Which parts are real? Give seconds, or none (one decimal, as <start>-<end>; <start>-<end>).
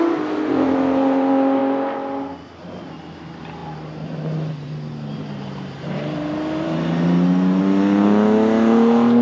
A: 0.0-9.2